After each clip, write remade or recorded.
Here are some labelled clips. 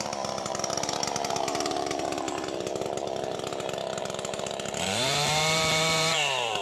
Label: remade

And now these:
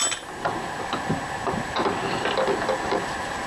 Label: recorded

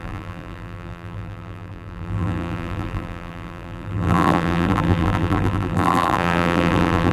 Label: remade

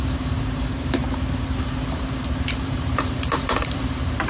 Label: remade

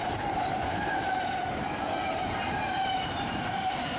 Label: remade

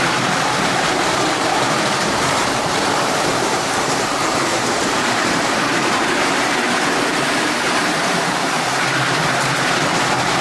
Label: remade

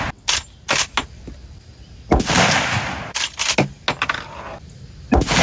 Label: recorded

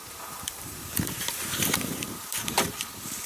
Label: remade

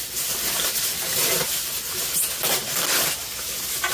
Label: recorded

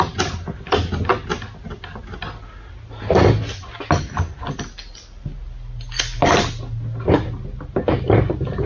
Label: recorded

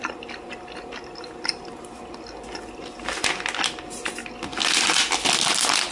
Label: recorded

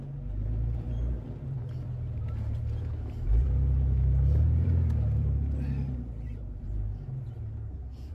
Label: remade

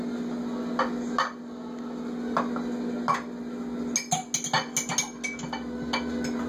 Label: recorded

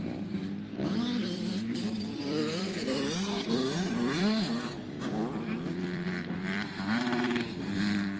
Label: remade